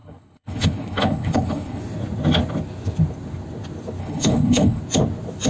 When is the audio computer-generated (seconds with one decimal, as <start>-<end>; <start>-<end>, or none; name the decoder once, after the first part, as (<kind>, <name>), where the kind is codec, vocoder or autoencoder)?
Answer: 0.0-1.8 (codec, HILCodec); 4.0-4.8